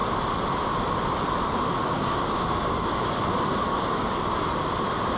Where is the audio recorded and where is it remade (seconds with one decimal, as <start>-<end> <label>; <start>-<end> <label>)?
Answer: 0.0-1.8 recorded; 1.8-3.2 remade; 3.2-3.7 recorded; 3.7-4.3 remade; 4.3-5.2 recorded